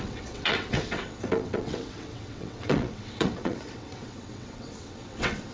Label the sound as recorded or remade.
remade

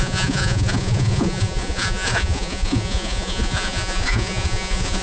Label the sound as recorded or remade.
remade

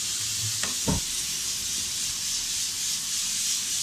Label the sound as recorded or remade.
recorded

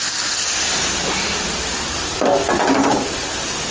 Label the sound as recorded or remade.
remade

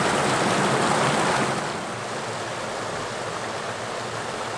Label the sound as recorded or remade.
recorded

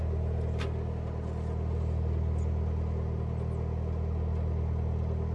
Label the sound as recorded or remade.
recorded